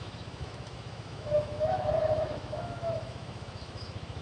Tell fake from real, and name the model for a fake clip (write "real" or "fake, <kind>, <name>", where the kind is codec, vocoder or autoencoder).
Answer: fake, autoencoder, DAC-VAE